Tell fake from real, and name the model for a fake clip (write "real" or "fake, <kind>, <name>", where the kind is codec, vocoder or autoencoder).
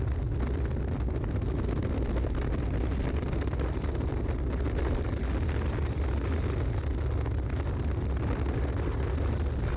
real